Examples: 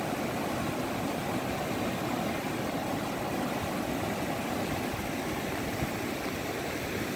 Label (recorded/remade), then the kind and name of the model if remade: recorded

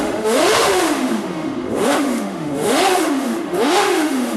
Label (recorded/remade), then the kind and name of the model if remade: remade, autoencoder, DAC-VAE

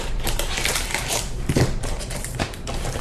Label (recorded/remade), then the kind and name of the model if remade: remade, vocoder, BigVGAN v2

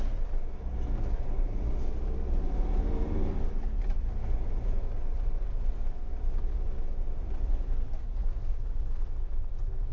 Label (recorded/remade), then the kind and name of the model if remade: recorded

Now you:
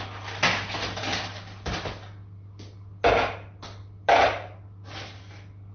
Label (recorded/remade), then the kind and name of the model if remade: recorded